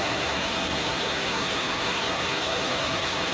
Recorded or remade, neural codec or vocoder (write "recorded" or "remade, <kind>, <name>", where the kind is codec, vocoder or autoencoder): remade, codec, SNAC